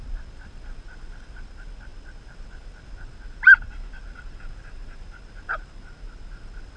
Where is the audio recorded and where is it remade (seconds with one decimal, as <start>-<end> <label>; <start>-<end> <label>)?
0.0-6.8 recorded